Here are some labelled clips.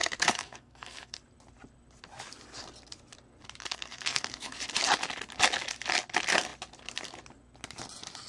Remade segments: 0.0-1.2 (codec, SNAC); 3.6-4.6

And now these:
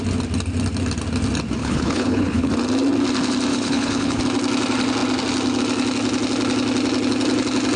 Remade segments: 1.6-2.5 (codec, HILCodec); 3.5-4.2

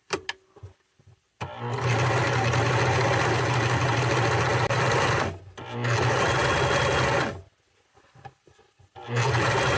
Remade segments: none

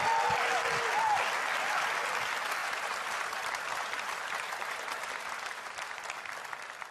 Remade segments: 2.6-6.0 (vocoder, BigVGAN v2)

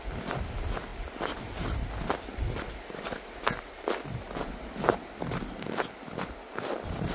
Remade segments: none

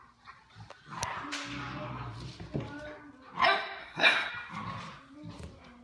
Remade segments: 3.8-4.3 (codec, SNAC)

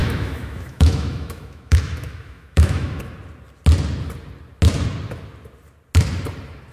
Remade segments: 0.0-3.0 (autoencoder, DAC-VAE)